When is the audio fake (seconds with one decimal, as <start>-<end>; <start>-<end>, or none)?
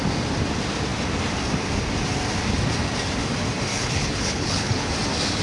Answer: 3.7-4.9